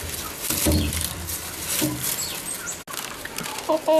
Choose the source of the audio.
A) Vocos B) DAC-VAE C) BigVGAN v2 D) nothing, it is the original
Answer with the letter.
D